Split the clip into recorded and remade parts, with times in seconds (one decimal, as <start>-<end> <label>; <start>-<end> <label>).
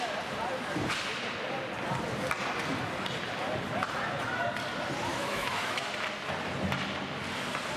0.0-5.1 recorded; 5.1-5.9 remade; 5.9-7.8 recorded